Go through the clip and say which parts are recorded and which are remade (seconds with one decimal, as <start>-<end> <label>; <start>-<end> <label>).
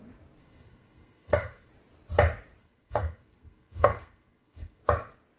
0.0-0.4 recorded; 0.4-1.7 remade; 1.7-2.6 recorded; 2.6-4.8 remade; 4.8-5.4 recorded